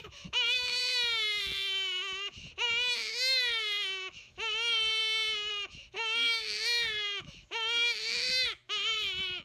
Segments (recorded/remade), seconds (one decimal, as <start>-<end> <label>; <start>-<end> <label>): 0.0-0.8 remade; 0.8-1.4 recorded; 1.4-2.5 remade; 2.5-3.1 recorded; 3.1-5.0 remade; 5.0-5.5 recorded; 5.5-9.4 remade